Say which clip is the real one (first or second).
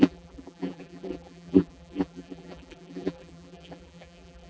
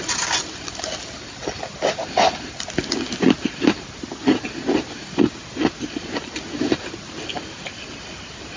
second